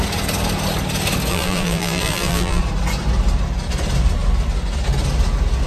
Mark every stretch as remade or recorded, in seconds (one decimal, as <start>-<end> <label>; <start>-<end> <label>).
0.0-1.3 recorded; 1.3-2.6 remade; 2.6-5.7 recorded